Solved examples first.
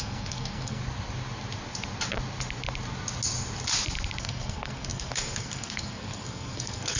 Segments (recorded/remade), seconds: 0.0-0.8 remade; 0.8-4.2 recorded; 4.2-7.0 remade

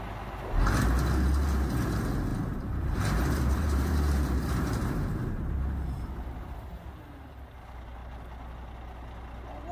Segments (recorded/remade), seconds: 0.0-2.3 recorded; 2.3-6.9 remade; 6.9-9.7 recorded

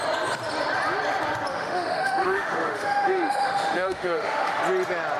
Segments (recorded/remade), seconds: 0.0-1.5 recorded; 1.5-4.6 remade; 4.6-5.2 recorded

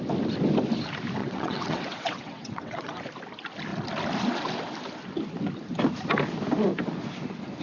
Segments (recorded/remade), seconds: 0.0-1.2 recorded; 1.2-3.0 remade; 3.0-7.6 recorded